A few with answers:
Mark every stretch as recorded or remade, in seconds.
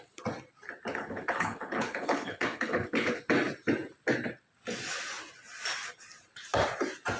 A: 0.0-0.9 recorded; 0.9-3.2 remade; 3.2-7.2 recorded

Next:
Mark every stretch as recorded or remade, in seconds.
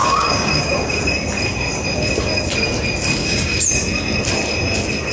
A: 0.0-1.0 remade; 1.0-3.2 recorded; 3.2-3.7 remade; 3.7-5.1 recorded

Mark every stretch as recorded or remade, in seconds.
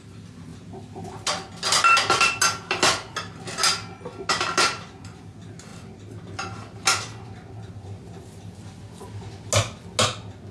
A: 0.0-10.5 recorded